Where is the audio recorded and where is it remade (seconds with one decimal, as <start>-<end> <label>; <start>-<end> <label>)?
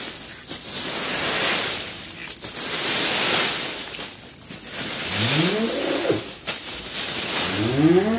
0.0-8.2 recorded